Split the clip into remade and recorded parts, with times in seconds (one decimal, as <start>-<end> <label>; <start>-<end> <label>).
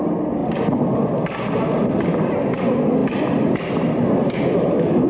0.0-5.1 recorded